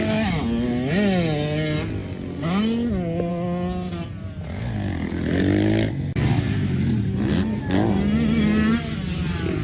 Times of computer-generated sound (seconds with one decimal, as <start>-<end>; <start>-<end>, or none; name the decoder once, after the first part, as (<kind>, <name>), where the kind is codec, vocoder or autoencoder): none